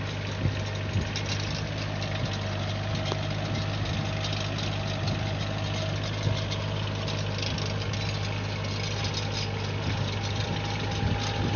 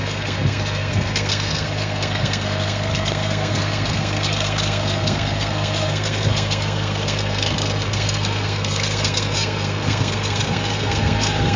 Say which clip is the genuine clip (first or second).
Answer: first